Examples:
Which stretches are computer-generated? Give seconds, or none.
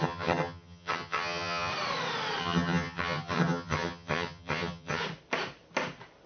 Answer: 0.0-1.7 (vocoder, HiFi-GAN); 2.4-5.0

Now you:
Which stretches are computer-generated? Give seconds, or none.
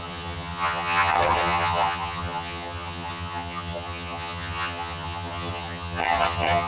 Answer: 0.0-6.7 (vocoder, HiFi-GAN)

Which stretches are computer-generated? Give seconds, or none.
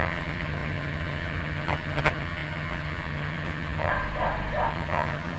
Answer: 0.0-3.9 (vocoder, HiFi-GAN); 4.7-5.4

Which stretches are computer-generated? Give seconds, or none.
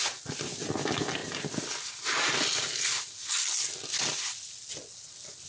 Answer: none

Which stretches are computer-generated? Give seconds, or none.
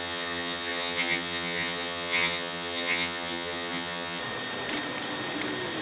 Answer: 0.0-4.2 (vocoder, HiFi-GAN)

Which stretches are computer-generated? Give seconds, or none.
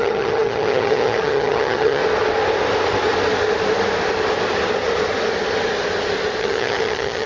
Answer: 0.0-2.0 (vocoder, HiFi-GAN); 6.4-7.3